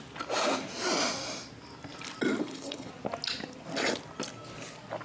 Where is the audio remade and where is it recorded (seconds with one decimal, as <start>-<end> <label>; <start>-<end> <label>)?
0.0-2.4 recorded; 2.4-2.9 remade; 2.9-5.0 recorded